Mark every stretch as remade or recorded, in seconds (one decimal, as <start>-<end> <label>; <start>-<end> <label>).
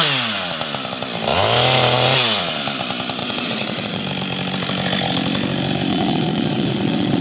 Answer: 0.0-3.2 recorded; 3.2-4.0 remade; 4.0-5.9 recorded; 5.9-7.2 remade